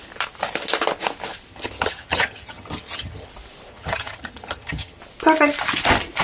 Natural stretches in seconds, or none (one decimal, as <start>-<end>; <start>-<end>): 0.0-1.5; 3.3-3.7; 5.0-6.2